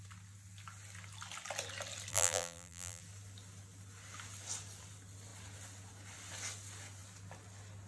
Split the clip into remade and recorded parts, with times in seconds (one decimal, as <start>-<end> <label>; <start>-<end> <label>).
0.0-2.1 recorded; 2.1-3.0 remade; 3.0-7.9 recorded